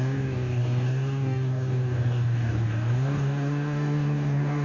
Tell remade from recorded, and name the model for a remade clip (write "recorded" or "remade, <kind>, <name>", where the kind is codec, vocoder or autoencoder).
remade, codec, DAC